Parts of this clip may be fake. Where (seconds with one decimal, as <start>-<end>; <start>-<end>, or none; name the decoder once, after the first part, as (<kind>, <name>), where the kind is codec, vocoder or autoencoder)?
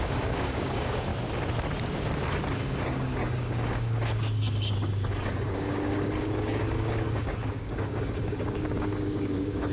0.0-1.1 (codec, DAC); 2.4-9.7